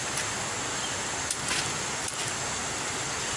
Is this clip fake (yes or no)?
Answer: no